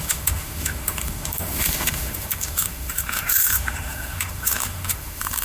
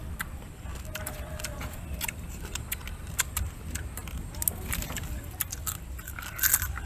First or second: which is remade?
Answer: first